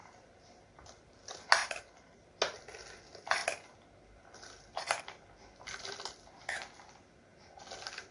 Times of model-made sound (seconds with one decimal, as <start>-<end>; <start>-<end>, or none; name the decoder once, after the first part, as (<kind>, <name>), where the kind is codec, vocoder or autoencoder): 0.0-0.9 (vocoder, BigVGAN v2); 1.6-2.2